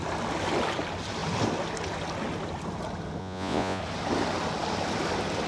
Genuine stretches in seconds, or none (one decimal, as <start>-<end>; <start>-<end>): 0.0-3.2; 3.8-5.5

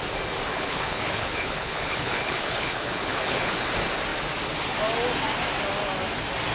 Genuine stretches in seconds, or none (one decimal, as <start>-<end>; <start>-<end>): 0.0-0.5; 3.5-6.5

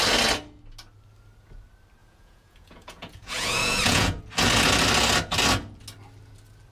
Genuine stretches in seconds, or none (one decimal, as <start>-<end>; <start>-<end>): 0.0-2.0; 4.2-6.7

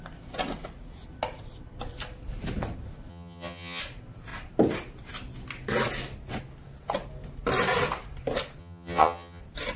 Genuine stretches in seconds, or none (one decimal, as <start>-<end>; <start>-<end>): 0.0-3.1; 3.8-8.6; 9.4-9.8